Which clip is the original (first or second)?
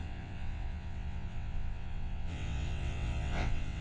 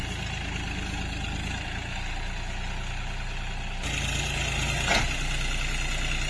second